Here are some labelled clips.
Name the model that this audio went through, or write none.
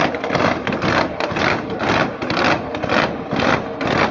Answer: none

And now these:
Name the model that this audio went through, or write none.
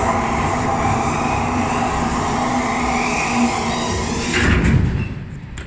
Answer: none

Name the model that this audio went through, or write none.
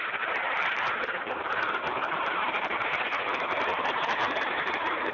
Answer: vocoder, BigVGAN v2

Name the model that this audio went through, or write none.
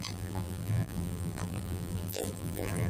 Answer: vocoder, BigVGAN v2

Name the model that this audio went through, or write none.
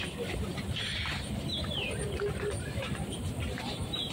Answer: vocoder, BigVGAN v2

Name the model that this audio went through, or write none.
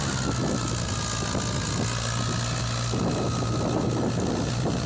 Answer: none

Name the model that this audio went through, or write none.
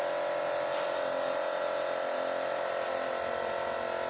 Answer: none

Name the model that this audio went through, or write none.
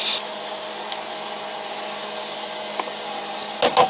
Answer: none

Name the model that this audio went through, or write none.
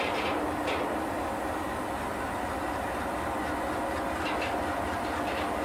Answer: none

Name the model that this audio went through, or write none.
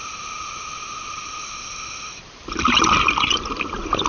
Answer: vocoder, BigVGAN v2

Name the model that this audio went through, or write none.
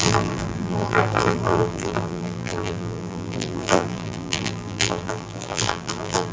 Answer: vocoder, BigVGAN v2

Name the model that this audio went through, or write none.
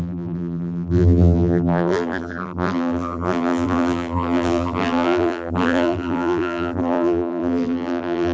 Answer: vocoder, BigVGAN v2